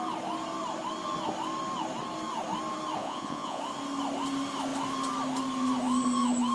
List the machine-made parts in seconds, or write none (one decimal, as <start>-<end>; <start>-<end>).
3.0-3.6